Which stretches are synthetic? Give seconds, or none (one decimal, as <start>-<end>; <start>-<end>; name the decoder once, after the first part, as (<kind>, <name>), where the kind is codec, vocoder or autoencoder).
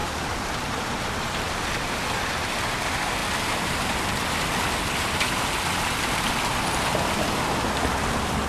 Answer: 0.0-1.6 (vocoder, BigVGAN v2); 3.2-4.0